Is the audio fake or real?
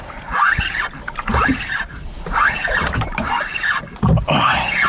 real